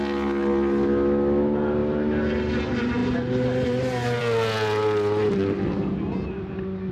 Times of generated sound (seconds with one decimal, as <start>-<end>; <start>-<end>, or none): none